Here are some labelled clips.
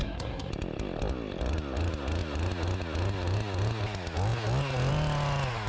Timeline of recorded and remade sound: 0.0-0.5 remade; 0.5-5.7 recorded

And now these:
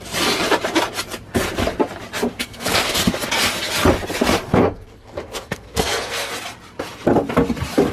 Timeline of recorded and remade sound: 0.0-2.3 recorded; 2.3-3.0 remade; 3.0-4.5 recorded; 4.5-6.3 remade; 6.3-7.9 recorded

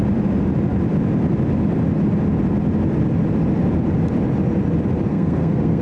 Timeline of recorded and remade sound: 0.0-5.1 recorded; 5.1-5.8 remade

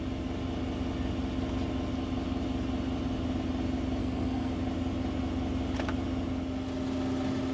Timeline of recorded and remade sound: 0.0-4.0 recorded; 4.0-4.5 remade; 4.5-7.5 recorded

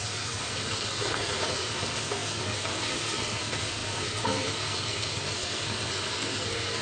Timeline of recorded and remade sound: 0.0-6.8 remade